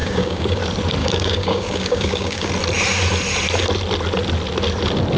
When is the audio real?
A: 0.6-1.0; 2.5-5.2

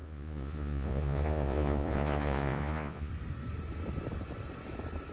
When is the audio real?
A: 3.1-5.1

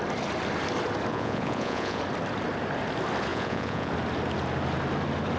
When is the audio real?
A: 0.0-1.1; 2.0-3.3; 3.9-5.4

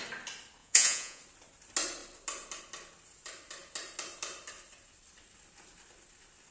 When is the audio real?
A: 0.0-0.6; 1.2-6.5

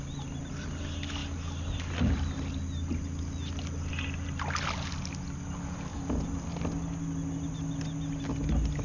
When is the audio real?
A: 0.0-8.8

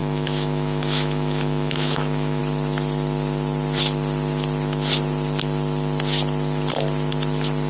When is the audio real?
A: 2.4-7.7